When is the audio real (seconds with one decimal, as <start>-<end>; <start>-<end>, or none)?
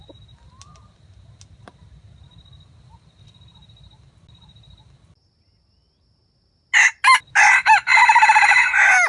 0.0-9.1